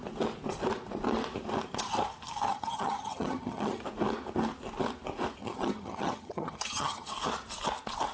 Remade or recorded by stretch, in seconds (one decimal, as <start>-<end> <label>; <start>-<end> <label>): 0.0-2.5 recorded; 2.5-3.8 remade; 3.8-5.4 recorded; 5.4-7.1 remade; 7.1-8.1 recorded